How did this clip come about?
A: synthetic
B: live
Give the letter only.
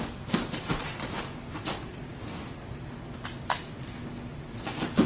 B